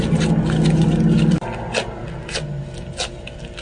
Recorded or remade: recorded